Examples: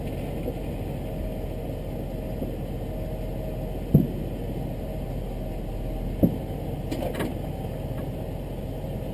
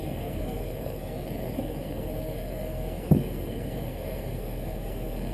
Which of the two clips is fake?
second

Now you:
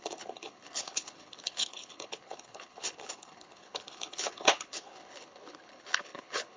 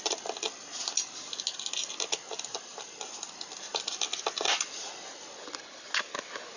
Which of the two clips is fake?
first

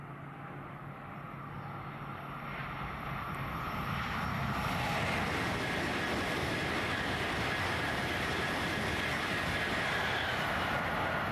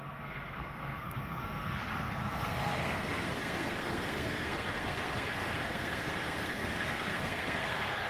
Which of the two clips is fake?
second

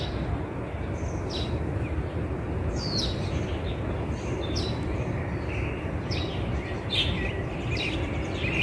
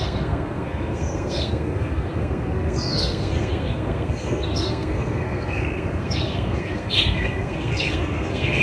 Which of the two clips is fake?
second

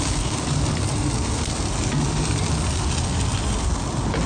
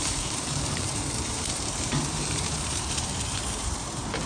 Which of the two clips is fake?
second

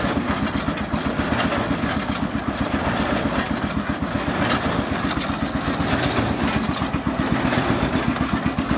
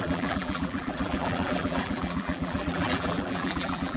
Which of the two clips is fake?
second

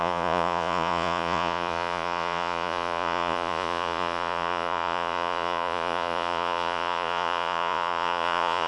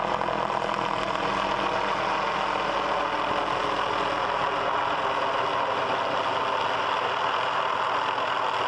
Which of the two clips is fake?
first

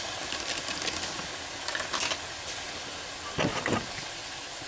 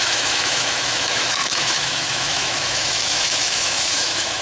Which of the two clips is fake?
second